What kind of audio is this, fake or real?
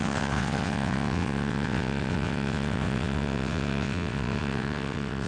fake